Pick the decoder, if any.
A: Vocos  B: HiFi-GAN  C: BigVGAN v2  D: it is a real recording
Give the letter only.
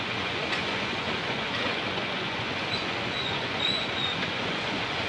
A